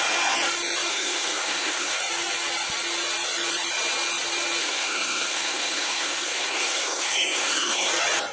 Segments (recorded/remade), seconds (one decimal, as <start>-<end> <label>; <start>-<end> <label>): 0.0-0.9 recorded; 0.9-2.0 remade; 2.0-4.6 recorded; 4.6-7.9 remade; 7.9-8.3 recorded